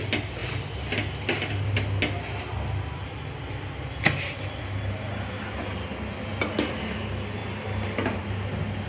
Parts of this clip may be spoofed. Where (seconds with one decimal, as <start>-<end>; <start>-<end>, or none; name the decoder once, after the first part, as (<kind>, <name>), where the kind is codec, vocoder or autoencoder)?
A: none

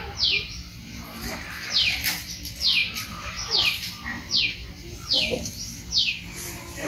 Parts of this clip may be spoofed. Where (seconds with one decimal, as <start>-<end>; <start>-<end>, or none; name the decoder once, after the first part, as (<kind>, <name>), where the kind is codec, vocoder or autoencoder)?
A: 2.8-4.4 (vocoder, BigVGAN v2)

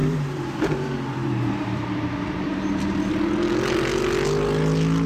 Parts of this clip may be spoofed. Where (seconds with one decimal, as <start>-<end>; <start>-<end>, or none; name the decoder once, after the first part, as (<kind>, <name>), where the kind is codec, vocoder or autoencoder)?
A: 0.0-3.1 (vocoder, BigVGAN v2)

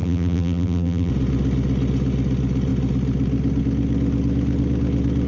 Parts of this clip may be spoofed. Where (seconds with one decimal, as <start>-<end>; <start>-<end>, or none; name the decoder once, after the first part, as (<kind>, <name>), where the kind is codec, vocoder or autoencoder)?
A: 0.0-1.1 (vocoder, BigVGAN v2)

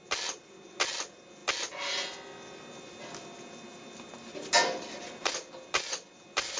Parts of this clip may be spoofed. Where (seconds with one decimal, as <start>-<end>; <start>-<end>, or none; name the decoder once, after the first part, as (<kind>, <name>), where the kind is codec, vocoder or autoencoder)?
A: none

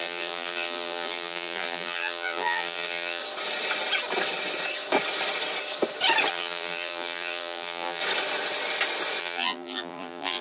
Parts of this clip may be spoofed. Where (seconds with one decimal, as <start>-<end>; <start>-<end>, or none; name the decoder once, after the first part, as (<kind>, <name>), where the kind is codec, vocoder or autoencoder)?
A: 0.0-3.2 (vocoder, BigVGAN v2); 6.3-8.0; 9.2-10.4

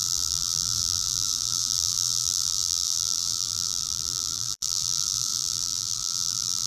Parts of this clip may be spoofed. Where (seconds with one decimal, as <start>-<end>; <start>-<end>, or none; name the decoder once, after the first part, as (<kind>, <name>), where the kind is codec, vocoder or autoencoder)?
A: 0.0-6.7 (vocoder, BigVGAN v2)

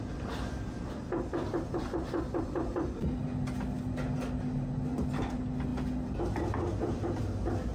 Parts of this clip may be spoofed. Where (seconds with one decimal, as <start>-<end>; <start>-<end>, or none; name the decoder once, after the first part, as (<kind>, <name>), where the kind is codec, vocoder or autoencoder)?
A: none